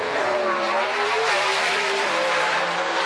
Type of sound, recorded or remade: remade